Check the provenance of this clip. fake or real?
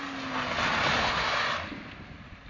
real